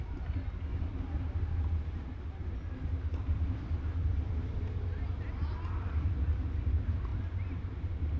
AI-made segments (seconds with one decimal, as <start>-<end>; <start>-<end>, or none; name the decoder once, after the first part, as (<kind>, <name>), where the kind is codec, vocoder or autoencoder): 3.3-4.5 (vocoder, BigVGAN v2)